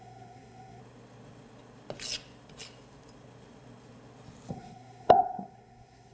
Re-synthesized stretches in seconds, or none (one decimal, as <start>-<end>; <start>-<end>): 0.0-0.8; 4.5-6.1